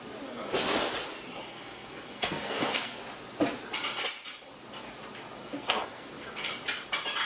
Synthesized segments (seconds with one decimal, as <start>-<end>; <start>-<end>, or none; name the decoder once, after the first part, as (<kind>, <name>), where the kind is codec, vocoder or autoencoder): 1.5-3.0 (codec, SNAC); 5.4-6.5